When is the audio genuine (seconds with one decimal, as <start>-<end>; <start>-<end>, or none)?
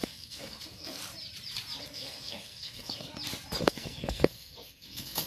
1.0-1.8; 3.1-3.6